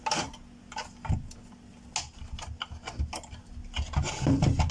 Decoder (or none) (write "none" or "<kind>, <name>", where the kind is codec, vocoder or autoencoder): none